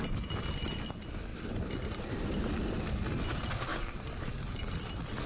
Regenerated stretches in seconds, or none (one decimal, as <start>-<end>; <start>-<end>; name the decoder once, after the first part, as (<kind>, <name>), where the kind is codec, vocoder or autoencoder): 1.3-2.7 (vocoder, BigVGAN v2); 3.7-4.7